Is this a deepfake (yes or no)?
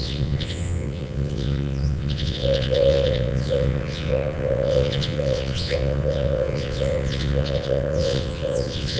yes